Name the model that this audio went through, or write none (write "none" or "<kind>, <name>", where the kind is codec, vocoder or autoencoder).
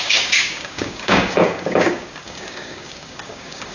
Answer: codec, DAC